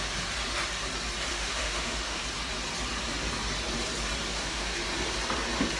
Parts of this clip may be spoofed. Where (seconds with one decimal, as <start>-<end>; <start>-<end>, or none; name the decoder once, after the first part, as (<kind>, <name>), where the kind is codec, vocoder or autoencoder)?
1.3-2.2 (autoencoder, DAC-VAE); 4.3-4.8